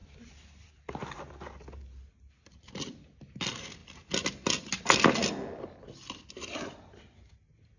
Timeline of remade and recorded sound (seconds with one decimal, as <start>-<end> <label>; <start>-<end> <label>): 0.0-7.8 recorded